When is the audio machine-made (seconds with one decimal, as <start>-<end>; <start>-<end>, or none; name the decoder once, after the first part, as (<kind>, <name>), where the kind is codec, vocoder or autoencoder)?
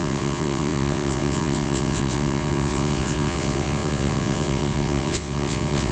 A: 0.0-5.9 (vocoder, WaveNeXt)